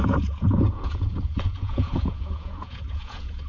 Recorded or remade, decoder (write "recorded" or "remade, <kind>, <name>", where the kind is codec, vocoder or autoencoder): remade, vocoder, Vocos